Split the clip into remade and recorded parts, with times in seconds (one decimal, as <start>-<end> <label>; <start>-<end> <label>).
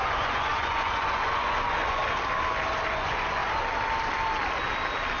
0.0-2.0 remade; 2.0-2.9 recorded; 2.9-3.4 remade; 3.4-5.2 recorded